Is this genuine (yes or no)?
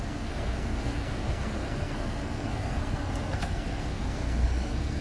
no